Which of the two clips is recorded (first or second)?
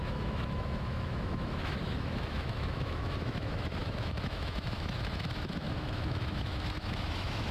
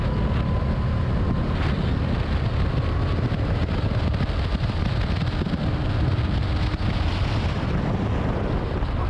second